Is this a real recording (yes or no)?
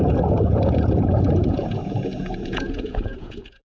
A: no